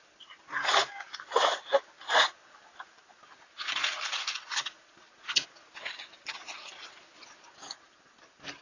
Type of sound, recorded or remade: recorded